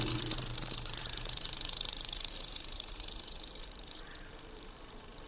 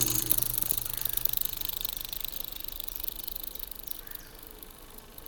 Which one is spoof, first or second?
first